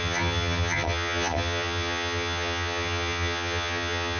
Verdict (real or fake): fake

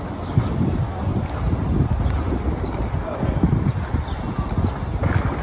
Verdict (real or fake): real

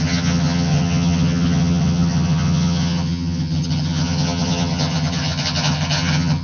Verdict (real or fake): fake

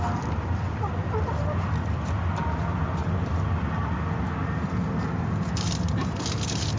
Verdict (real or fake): real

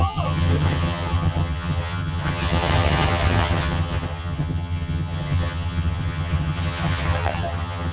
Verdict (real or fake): fake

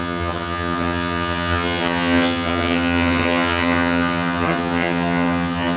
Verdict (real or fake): fake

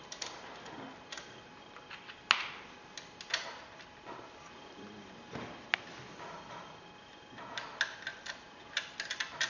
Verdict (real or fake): real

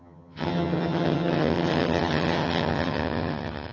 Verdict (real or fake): fake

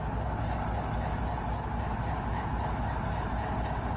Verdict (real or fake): real